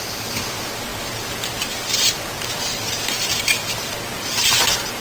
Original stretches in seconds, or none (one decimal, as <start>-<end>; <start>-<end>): none